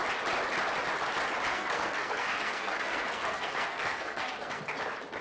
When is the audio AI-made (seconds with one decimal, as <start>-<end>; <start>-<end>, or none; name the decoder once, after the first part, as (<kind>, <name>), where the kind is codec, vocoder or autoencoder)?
1.5-4.6 (codec, SNAC)